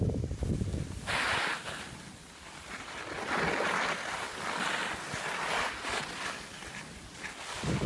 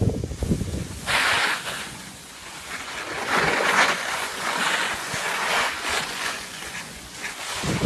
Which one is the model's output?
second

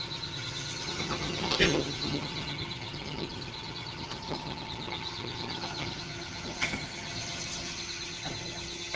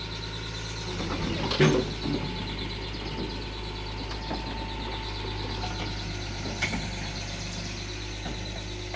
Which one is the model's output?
first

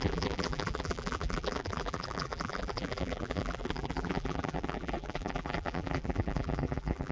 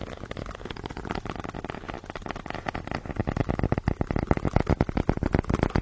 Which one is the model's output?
first